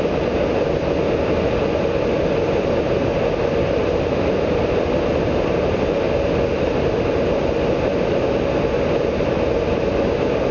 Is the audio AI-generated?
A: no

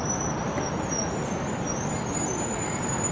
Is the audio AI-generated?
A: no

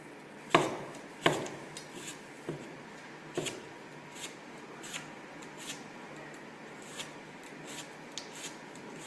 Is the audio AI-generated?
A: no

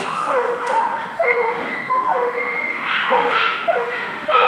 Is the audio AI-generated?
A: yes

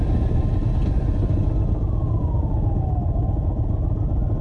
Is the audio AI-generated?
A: no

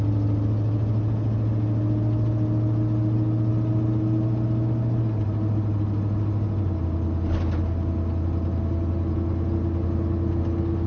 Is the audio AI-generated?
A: no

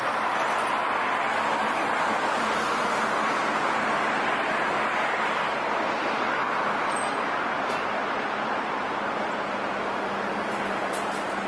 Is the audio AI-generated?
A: no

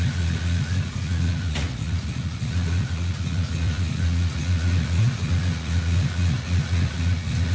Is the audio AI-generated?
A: yes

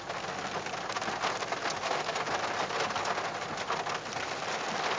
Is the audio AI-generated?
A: no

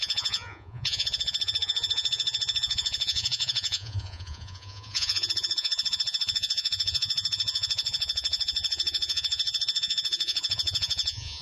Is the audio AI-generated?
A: yes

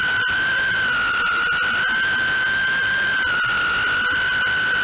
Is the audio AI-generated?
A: no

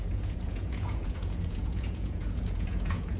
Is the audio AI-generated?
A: yes